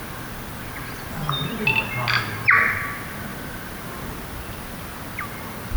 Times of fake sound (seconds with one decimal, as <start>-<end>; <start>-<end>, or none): none